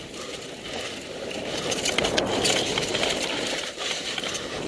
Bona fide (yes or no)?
yes